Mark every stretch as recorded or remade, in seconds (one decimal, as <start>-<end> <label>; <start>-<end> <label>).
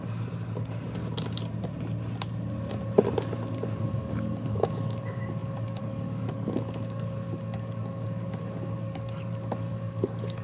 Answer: 0.0-1.0 remade; 1.0-3.8 recorded; 3.8-10.4 remade